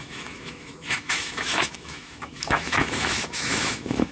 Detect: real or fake fake